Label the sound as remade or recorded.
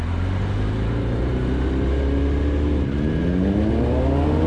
recorded